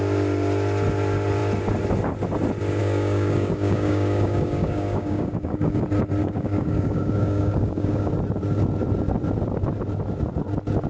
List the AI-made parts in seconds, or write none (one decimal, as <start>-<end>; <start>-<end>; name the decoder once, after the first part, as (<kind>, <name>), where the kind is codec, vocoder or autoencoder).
2.8-5.8 (codec, DAC); 6.2-8.1